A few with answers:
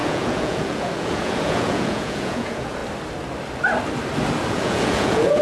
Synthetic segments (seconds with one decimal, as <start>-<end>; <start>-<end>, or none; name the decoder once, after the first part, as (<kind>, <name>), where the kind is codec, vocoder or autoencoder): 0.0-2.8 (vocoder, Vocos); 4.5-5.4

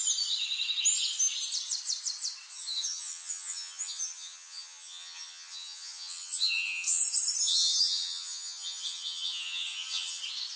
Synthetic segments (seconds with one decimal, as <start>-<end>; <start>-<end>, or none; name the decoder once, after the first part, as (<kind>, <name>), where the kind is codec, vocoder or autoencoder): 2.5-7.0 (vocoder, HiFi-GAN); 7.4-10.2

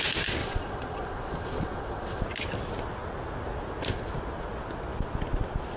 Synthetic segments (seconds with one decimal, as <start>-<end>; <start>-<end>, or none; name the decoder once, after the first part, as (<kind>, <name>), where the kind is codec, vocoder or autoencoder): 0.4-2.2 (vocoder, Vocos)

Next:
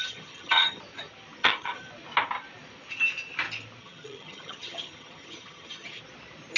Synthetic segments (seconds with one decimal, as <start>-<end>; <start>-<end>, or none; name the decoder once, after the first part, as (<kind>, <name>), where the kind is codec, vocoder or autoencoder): 0.0-0.8 (vocoder, HiFi-GAN); 1.4-1.9; 3.8-6.0

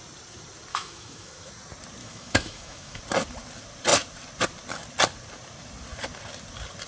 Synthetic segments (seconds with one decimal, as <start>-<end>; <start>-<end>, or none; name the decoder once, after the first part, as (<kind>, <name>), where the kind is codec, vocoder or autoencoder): 0.7-1.5 (autoencoder, DAC-VAE); 2.0-3.0

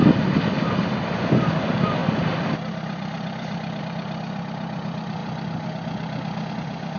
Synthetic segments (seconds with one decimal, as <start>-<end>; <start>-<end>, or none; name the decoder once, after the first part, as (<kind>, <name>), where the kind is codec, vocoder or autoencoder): none

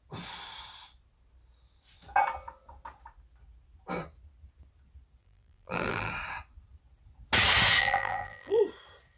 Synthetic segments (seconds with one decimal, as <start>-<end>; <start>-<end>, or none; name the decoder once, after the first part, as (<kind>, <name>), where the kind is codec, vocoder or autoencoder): 5.2-6.1 (vocoder, BigVGAN v2); 7.8-8.6